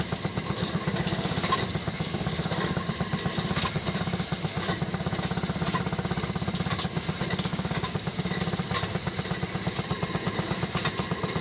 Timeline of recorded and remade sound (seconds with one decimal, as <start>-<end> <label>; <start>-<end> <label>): 0.0-2.1 recorded; 2.1-2.9 remade; 2.9-7.5 recorded; 7.5-8.4 remade; 8.4-11.4 recorded